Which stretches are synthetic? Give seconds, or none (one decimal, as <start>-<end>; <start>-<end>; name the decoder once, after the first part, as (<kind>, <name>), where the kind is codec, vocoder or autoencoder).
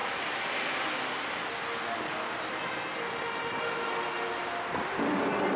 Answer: none